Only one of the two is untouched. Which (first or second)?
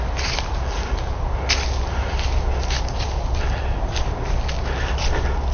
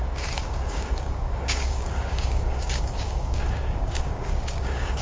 first